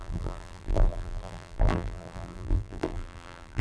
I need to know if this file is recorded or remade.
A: remade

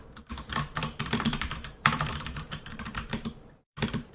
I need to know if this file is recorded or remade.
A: remade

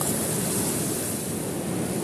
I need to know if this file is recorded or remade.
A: recorded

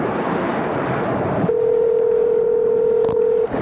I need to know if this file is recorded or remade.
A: remade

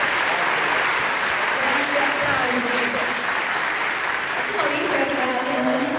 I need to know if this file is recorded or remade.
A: remade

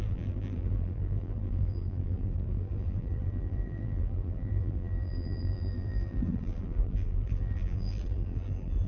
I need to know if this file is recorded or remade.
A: remade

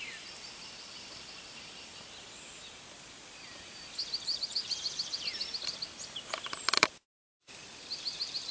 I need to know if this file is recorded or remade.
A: remade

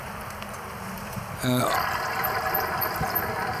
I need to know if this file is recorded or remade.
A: recorded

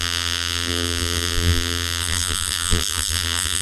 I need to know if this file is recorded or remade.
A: remade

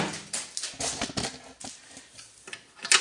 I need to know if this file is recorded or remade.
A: recorded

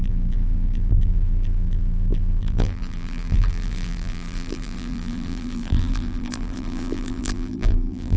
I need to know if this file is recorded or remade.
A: remade